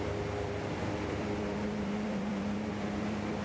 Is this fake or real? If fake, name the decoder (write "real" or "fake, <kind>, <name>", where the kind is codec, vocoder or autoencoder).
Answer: fake, vocoder, BigVGAN v2